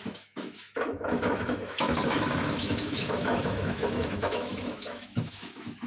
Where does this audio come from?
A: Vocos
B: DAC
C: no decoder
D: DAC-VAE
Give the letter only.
D